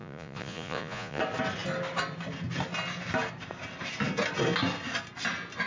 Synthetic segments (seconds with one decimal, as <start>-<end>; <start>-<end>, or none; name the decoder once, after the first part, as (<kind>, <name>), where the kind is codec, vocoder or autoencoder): 0.0-1.2 (vocoder, Vocos)